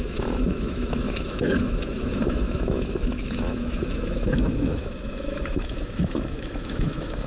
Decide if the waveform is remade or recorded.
remade